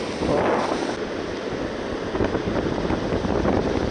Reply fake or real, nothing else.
real